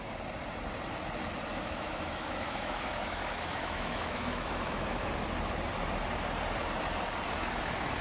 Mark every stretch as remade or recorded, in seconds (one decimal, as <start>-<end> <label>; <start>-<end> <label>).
0.0-1.5 recorded; 1.5-5.0 remade; 5.0-8.0 recorded